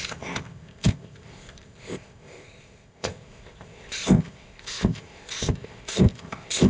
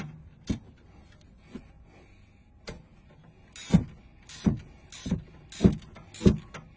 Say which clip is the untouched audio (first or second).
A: second